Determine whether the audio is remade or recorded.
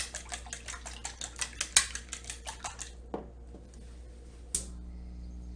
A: recorded